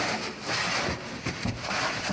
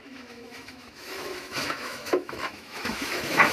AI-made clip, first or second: second